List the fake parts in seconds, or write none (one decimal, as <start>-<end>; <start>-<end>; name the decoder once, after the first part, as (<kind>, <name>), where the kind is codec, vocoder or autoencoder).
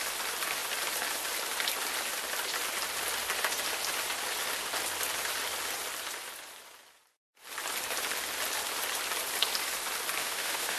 10.2-10.8 (autoencoder, DAC-VAE)